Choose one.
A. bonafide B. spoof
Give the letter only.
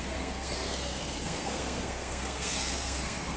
B